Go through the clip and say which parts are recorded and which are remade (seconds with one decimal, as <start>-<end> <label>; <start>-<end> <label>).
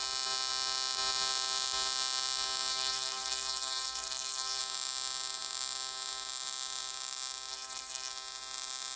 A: 0.0-2.7 recorded; 2.7-4.6 remade; 4.6-7.5 recorded; 7.5-8.1 remade; 8.1-9.0 recorded